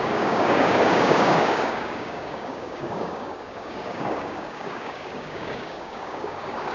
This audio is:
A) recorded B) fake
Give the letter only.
B